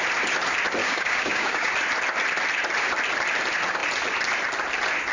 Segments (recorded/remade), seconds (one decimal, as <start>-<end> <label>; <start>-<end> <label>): 0.0-0.8 recorded; 0.8-1.7 remade; 1.7-5.1 recorded